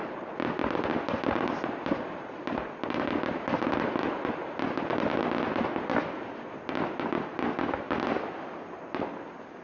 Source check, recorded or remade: recorded